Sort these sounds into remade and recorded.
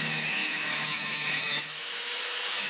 remade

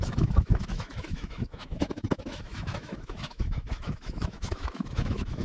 remade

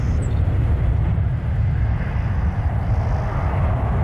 recorded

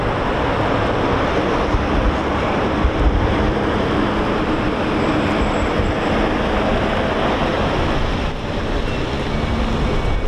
recorded